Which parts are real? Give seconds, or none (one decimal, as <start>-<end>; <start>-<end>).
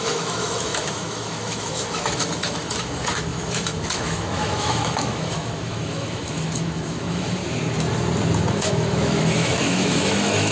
7.4-8.7